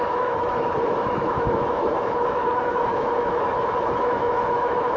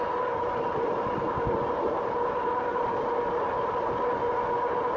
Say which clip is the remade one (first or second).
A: first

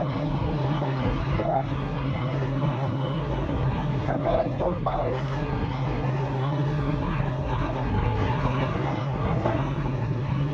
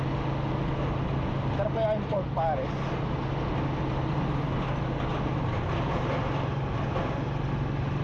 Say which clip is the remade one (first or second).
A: first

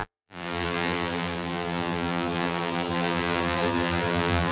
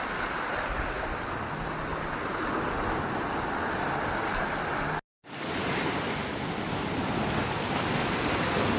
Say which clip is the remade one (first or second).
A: first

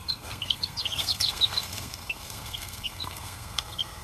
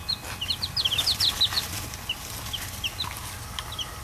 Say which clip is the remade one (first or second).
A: first